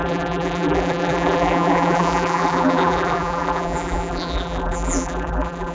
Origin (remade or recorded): remade